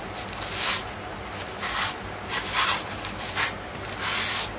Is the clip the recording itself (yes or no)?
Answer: yes